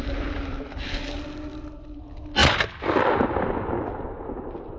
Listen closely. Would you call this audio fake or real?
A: real